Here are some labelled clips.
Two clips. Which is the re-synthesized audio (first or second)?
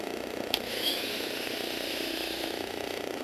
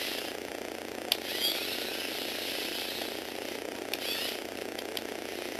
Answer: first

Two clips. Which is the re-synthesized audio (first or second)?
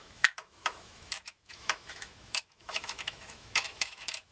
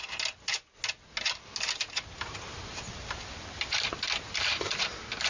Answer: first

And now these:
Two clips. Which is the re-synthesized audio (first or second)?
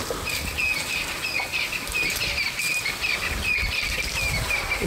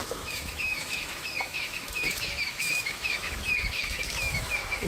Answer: second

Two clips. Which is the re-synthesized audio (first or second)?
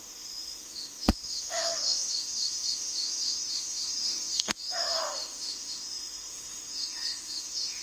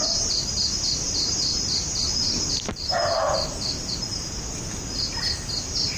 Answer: first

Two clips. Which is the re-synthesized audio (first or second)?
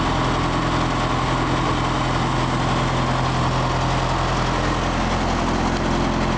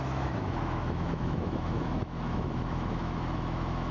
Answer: second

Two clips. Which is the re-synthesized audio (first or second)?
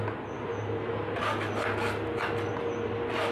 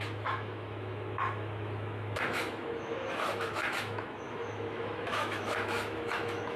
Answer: second